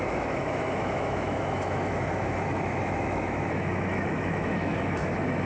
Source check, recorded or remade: remade